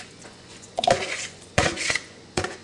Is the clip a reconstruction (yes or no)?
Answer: yes